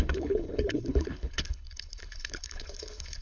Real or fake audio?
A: fake